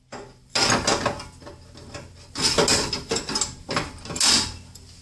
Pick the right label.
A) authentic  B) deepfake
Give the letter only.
A